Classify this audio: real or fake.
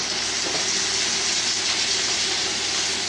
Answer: real